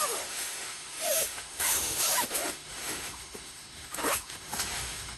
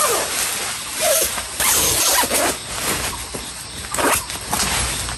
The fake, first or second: first